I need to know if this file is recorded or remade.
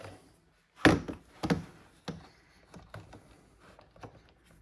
recorded